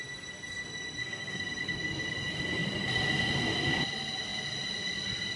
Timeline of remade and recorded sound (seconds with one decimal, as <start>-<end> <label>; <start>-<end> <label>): 0.0-1.0 recorded; 1.0-1.8 remade; 1.8-5.4 recorded